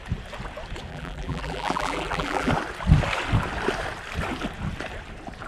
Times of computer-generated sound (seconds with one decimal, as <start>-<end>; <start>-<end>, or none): 0.9-2.5